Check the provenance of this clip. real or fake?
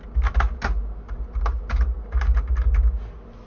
real